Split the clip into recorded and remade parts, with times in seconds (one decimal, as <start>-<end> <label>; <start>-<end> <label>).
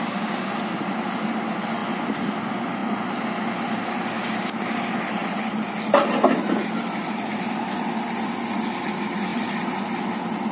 0.0-7.0 recorded; 7.0-7.6 remade; 7.6-9.3 recorded; 9.3-10.0 remade; 10.0-10.5 recorded